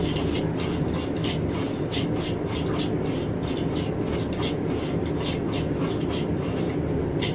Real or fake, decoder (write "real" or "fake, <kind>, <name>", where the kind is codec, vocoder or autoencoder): real